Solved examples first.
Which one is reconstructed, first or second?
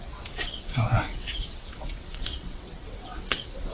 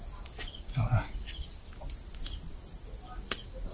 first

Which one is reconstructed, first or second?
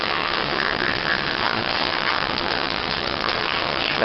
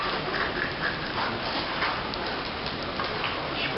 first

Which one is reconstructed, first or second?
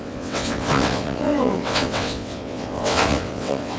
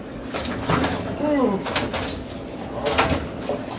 first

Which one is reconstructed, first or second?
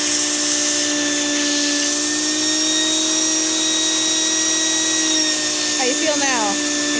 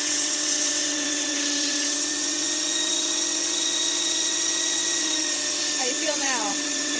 second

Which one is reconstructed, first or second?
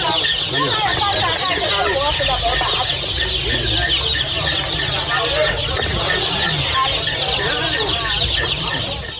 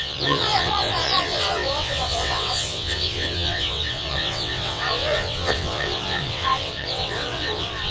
second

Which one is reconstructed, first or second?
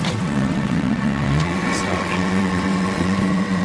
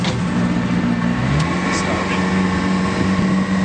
first